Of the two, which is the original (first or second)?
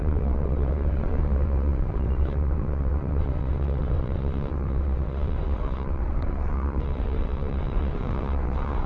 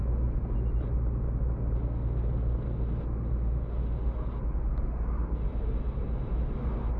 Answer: second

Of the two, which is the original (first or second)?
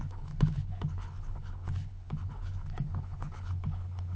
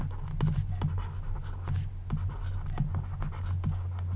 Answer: second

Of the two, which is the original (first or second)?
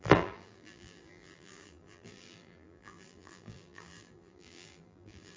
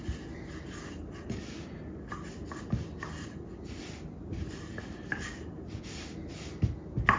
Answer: second